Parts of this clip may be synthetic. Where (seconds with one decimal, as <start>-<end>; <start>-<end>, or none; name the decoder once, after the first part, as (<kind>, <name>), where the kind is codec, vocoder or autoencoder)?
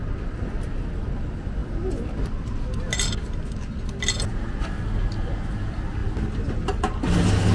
none